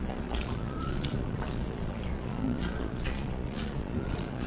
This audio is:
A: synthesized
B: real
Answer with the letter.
A